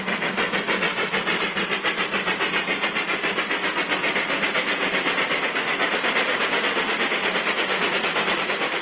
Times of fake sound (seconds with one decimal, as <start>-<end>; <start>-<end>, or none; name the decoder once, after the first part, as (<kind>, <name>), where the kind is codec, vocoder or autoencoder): none